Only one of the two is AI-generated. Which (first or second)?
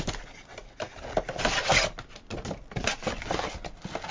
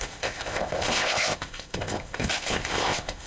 second